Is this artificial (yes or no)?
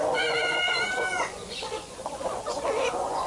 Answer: yes